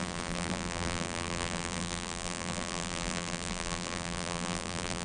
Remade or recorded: remade